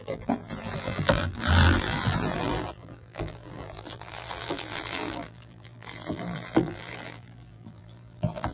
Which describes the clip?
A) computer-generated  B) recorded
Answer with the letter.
A